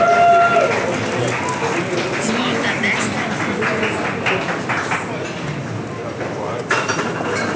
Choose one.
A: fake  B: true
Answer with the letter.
B